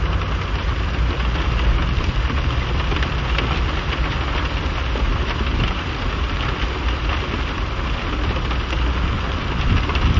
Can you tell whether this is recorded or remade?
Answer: recorded